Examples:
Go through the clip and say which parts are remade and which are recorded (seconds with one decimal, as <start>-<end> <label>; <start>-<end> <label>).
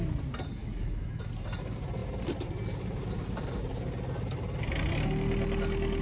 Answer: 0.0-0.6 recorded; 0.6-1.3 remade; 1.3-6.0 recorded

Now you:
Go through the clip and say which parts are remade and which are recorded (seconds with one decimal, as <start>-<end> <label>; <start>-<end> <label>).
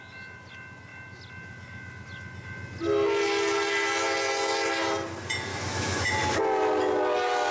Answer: 0.0-5.5 recorded; 5.5-6.1 remade; 6.1-7.5 recorded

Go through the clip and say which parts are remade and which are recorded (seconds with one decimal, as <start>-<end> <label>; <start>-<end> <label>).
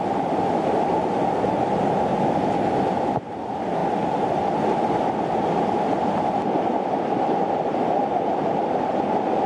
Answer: 0.0-9.5 recorded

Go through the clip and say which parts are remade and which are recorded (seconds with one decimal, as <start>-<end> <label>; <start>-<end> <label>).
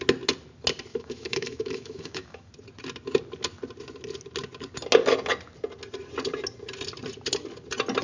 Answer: 0.0-0.9 recorded; 0.9-2.5 remade; 2.5-8.0 recorded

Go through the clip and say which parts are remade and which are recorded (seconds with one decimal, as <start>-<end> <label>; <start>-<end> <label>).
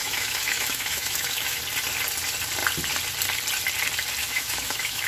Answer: 0.0-1.6 remade; 1.6-4.2 recorded; 4.2-5.1 remade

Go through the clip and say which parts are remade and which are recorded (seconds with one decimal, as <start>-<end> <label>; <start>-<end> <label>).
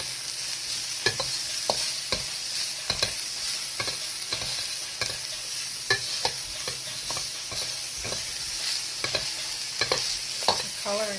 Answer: 0.0-11.2 recorded